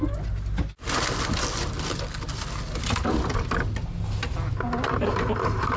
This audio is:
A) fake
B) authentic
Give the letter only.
B